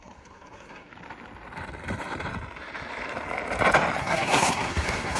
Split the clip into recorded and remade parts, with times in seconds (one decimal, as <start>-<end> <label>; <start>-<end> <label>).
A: 0.0-0.9 remade; 0.9-4.0 recorded; 4.0-5.2 remade